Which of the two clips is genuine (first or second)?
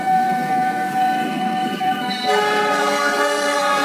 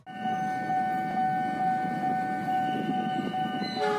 second